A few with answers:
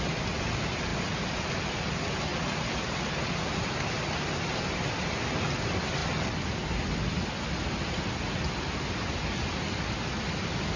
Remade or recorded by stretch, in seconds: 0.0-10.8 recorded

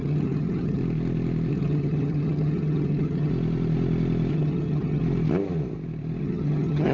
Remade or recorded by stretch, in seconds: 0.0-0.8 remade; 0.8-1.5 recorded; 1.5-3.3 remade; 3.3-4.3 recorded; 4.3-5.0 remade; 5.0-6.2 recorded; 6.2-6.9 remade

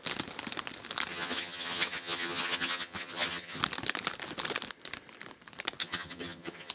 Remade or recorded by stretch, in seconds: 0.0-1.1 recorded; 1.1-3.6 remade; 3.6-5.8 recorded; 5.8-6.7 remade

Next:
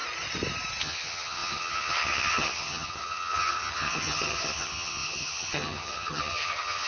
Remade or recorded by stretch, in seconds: 0.0-0.8 recorded; 0.8-6.9 remade

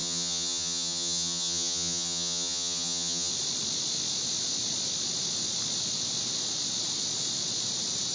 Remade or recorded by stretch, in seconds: 0.0-3.3 remade; 3.3-8.1 recorded